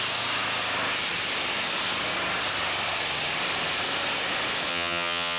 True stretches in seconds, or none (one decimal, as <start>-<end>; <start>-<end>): 0.0-4.7